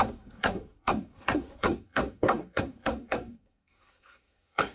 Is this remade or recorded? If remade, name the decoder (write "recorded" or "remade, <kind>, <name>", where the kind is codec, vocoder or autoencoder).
remade, codec, SNAC